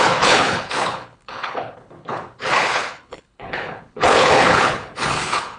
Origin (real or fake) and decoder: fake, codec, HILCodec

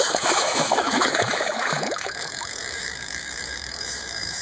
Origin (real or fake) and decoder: fake, autoencoder, DAC-VAE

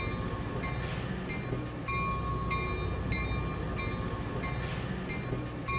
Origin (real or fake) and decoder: real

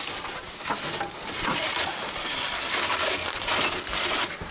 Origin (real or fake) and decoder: real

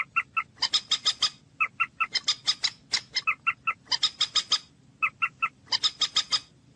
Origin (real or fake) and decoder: real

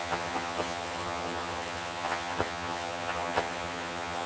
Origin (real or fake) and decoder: fake, vocoder, HiFi-GAN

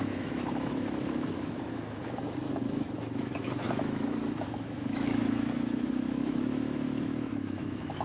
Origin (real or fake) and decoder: fake, autoencoder, DAC-VAE